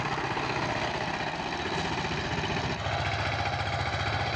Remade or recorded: recorded